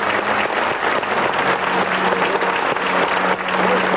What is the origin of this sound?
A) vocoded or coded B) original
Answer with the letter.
B